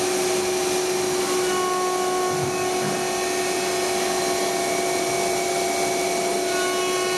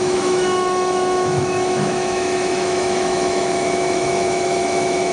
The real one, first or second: first